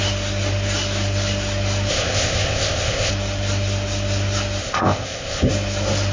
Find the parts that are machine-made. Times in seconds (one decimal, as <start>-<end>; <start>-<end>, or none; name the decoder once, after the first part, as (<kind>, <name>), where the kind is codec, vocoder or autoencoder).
1.9-3.1 (codec, ZipCodec); 4.6-5.5